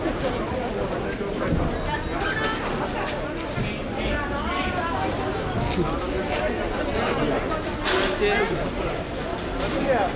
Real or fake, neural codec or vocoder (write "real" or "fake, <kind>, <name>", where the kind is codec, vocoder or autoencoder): real